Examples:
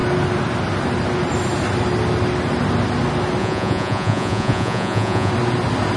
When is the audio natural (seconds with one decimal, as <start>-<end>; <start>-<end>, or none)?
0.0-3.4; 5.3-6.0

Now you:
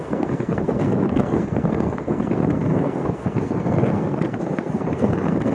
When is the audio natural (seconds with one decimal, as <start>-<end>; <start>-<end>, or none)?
none

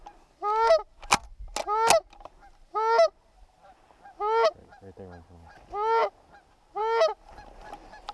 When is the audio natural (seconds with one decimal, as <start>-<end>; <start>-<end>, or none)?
0.0-8.1